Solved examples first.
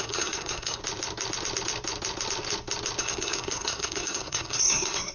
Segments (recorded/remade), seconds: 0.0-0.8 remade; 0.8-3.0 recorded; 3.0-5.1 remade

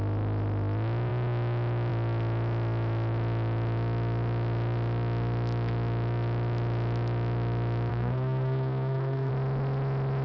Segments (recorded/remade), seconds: 0.0-7.9 recorded; 7.9-9.3 remade; 9.3-10.2 recorded

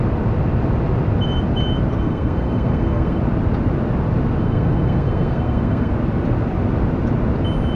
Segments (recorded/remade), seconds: 0.0-1.9 recorded; 1.9-3.2 remade; 3.2-4.4 recorded; 4.4-5.9 remade; 5.9-7.8 recorded

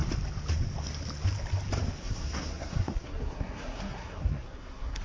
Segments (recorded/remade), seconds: 0.0-2.0 recorded; 2.0-5.0 remade